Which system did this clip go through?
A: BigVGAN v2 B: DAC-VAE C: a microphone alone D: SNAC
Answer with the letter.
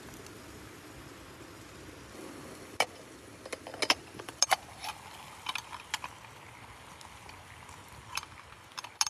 C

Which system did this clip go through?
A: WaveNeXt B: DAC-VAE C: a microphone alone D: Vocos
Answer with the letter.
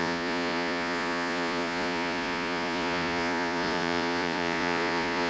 D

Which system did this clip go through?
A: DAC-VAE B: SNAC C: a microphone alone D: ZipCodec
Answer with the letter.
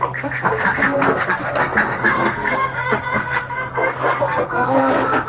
B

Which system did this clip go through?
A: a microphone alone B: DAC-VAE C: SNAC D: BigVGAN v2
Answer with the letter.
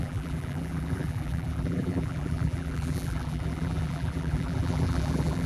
D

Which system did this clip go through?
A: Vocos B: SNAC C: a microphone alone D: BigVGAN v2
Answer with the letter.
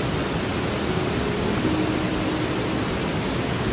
C